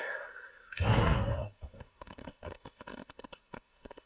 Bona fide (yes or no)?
no